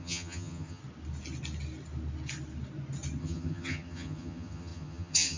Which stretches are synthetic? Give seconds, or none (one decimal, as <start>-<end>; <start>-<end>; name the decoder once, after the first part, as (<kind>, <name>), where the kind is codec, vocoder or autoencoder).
0.0-0.8 (vocoder, HiFi-GAN); 3.2-5.4